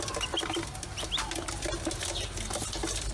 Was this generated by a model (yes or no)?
no